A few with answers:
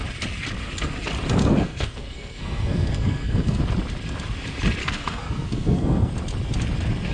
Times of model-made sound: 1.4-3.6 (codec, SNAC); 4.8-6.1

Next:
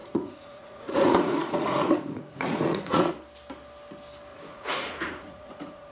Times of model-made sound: 0.0-3.1 (vocoder, Vocos); 4.3-5.9

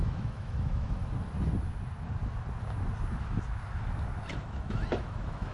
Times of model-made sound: 0.0-1.0 (autoencoder, DAC-VAE); 4.3-5.5

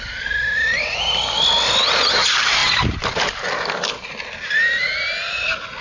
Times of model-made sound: none